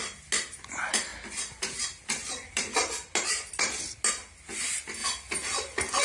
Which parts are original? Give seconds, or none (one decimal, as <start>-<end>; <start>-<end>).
0.0-6.0